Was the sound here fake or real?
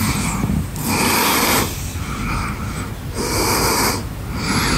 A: real